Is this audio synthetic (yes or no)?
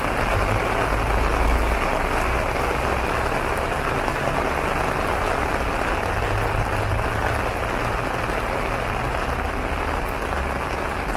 no